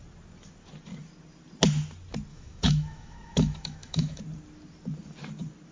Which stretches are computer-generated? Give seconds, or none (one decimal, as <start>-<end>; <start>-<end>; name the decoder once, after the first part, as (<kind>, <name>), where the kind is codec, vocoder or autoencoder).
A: 2.3-4.2 (autoencoder, DAC-VAE)